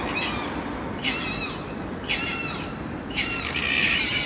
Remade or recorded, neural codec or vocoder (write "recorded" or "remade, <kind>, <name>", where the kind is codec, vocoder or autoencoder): remade, vocoder, BigVGAN v2